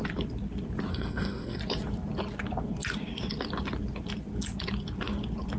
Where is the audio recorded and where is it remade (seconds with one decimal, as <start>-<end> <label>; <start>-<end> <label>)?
0.0-0.9 recorded; 0.9-1.6 remade; 1.6-5.6 recorded